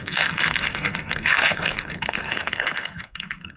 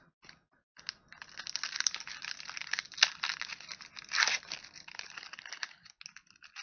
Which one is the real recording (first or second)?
second